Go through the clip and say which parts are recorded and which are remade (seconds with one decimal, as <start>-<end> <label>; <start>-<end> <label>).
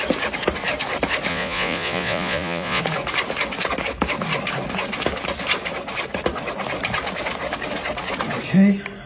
0.0-1.3 recorded; 1.3-2.8 remade; 2.8-9.1 recorded